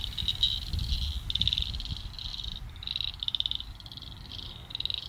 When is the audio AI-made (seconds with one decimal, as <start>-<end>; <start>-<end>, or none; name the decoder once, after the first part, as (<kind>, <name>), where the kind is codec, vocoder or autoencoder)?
2.3-4.3 (vocoder, BigVGAN v2)